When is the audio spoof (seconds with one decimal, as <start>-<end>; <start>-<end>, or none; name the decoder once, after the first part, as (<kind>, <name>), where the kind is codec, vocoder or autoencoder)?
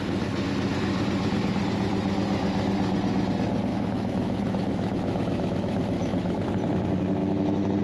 3.7-6.5 (autoencoder, DAC-VAE); 7.2-7.8